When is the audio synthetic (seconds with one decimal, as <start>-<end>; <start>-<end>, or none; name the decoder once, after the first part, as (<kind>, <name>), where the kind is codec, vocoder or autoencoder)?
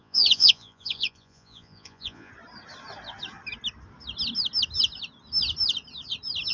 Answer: 0.0-2.3 (vocoder, Vocos)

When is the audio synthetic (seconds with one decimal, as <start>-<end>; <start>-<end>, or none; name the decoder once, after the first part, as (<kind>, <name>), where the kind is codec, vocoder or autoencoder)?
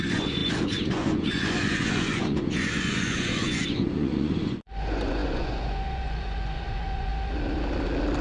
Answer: 0.0-7.1 (vocoder, Vocos)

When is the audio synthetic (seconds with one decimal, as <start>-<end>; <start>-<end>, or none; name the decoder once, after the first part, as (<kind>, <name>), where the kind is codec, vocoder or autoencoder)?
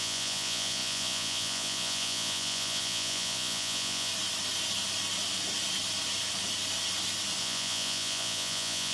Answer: 0.0-4.1 (vocoder, Vocos); 7.4-8.9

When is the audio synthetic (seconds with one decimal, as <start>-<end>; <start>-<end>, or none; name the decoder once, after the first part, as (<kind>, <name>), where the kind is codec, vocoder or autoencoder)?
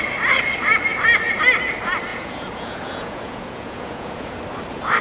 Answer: 2.1-4.4 (vocoder, Vocos)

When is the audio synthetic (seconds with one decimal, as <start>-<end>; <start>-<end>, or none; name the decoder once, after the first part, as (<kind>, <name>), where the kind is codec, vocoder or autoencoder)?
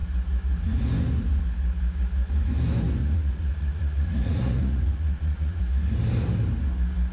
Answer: 3.0-5.6 (vocoder, Vocos)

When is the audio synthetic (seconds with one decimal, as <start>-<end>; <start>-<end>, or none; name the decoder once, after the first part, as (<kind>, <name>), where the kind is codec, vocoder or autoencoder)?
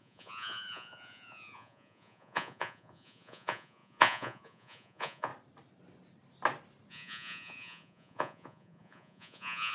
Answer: 0.0-5.3 (vocoder, Vocos); 6.9-9.7